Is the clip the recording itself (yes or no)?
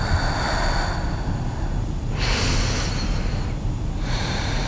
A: yes